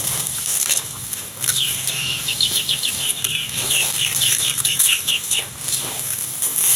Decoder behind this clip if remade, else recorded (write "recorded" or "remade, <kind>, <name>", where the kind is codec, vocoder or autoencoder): remade, codec, DAC